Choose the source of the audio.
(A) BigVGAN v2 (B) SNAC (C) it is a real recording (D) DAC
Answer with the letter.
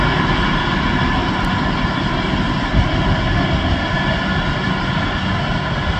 C